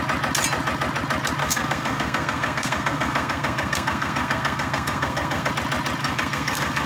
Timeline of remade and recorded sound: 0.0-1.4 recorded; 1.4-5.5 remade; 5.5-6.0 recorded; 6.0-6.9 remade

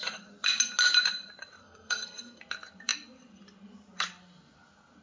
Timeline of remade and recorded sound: 0.0-1.6 recorded; 1.6-2.4 remade; 2.4-5.0 recorded

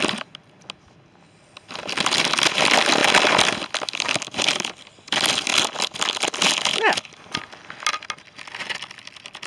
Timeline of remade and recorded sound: 0.0-9.5 recorded

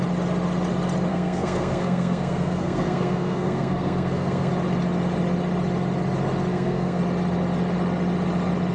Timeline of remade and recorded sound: 0.0-1.1 recorded; 1.1-4.5 remade; 4.5-6.5 recorded; 6.5-7.0 remade; 7.0-8.7 recorded

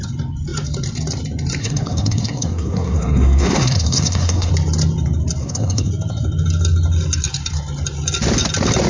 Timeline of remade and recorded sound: 0.0-1.6 recorded; 1.6-4.5 remade; 4.5-5.4 recorded; 5.4-5.9 remade; 5.9-8.9 recorded

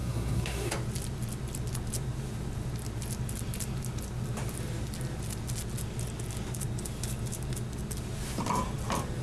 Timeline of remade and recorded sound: 0.0-0.7 remade; 0.7-9.2 recorded

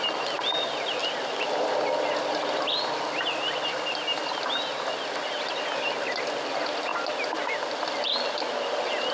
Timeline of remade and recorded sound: 0.0-9.1 recorded